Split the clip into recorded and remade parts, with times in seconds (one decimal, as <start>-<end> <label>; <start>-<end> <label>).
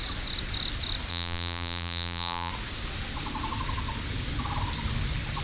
0.0-1.1 recorded; 1.1-2.5 remade; 2.5-5.4 recorded